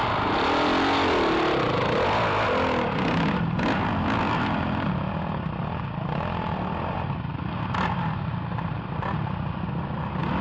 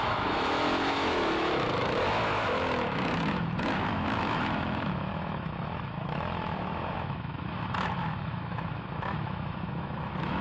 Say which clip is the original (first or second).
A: first